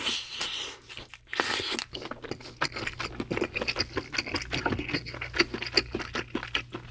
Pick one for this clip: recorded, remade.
recorded